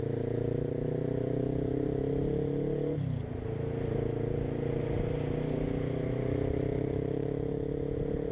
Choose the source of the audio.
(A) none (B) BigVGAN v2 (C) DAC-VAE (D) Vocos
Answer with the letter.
A